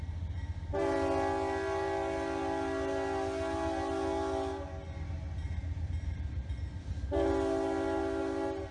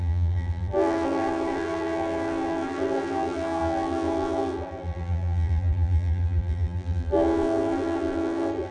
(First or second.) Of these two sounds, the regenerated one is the second